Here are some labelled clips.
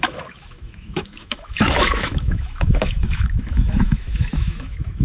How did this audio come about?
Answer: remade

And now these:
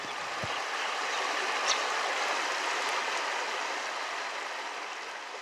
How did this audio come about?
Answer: recorded